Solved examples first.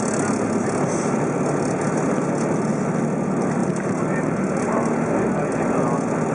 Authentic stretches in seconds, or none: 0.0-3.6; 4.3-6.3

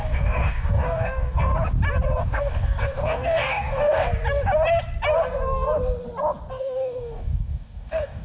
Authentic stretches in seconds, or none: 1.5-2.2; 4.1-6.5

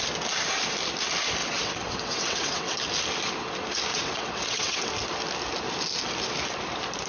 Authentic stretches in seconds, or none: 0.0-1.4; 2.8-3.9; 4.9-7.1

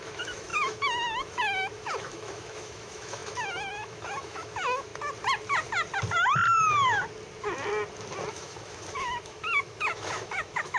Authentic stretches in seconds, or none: 4.9-8.3